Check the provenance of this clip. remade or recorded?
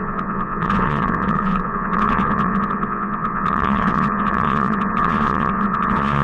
remade